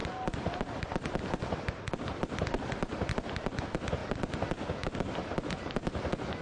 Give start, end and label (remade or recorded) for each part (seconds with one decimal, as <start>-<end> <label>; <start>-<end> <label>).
0.0-3.3 remade; 3.3-6.4 recorded